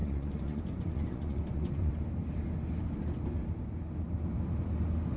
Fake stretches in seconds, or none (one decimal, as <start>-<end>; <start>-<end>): 0.0-1.9

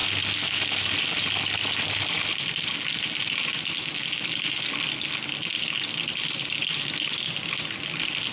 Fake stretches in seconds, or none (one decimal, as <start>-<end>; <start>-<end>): none

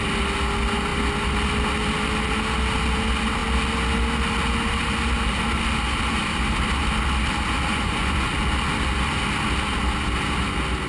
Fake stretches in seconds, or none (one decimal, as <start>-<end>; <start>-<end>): 7.7-8.3

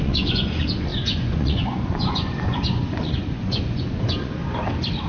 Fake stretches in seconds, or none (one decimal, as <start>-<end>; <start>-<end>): 0.0-4.4

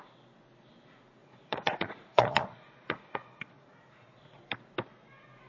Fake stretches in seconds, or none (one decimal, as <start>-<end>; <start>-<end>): 1.2-4.4

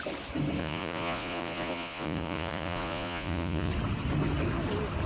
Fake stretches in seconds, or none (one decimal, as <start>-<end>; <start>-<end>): 0.6-3.7

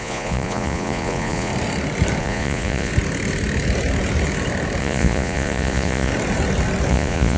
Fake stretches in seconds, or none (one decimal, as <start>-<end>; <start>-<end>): 0.0-1.5; 2.2-2.9; 4.8-6.1; 6.9-7.4